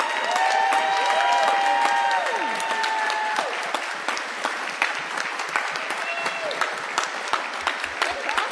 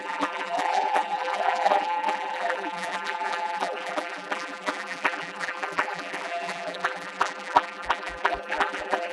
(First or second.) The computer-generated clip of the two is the second